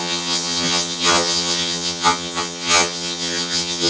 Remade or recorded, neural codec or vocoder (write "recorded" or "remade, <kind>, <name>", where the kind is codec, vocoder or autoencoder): remade, vocoder, HiFi-GAN